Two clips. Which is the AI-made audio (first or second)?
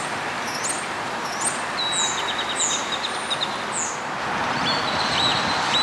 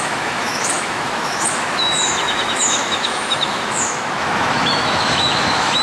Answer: second